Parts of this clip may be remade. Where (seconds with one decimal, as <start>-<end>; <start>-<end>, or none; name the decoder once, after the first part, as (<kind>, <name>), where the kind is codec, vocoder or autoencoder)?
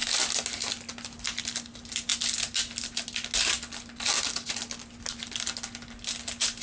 none